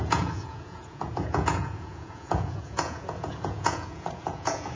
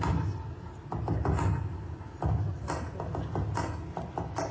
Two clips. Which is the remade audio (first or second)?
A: first